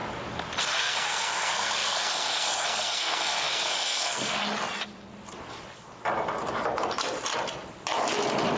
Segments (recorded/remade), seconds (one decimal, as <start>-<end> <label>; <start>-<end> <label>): 0.0-0.6 recorded; 0.6-4.4 remade; 4.4-8.6 recorded

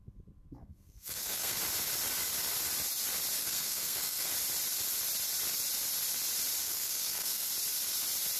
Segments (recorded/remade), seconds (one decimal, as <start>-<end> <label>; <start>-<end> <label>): 0.0-0.6 recorded; 0.6-1.6 remade; 1.6-3.4 recorded; 3.4-4.3 remade; 4.3-6.6 recorded; 6.6-7.5 remade; 7.5-8.4 recorded

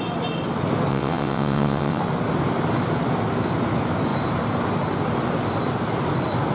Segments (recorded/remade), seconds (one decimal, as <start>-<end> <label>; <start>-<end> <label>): 0.0-0.9 recorded; 0.9-2.0 remade; 2.0-6.5 recorded

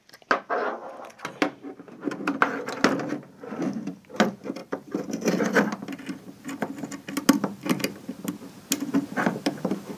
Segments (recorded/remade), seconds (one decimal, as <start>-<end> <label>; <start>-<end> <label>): 0.0-4.6 recorded; 4.6-7.1 remade; 7.1-10.0 recorded

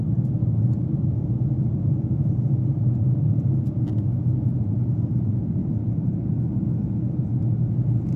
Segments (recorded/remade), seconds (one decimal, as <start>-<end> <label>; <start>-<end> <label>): 0.0-8.2 recorded

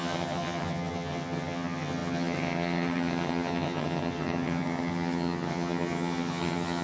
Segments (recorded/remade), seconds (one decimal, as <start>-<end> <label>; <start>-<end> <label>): 0.0-6.8 remade